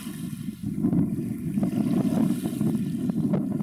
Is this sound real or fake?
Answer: real